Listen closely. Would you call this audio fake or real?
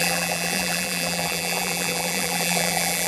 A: fake